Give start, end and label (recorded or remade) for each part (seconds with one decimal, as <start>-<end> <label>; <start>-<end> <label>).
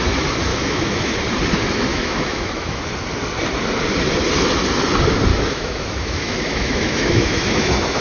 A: 0.0-0.5 recorded; 0.5-1.1 remade; 1.1-1.9 recorded; 1.9-2.8 remade; 2.8-5.3 recorded; 5.3-8.0 remade